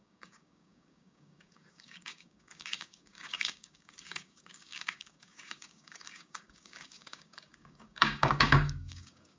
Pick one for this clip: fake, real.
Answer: fake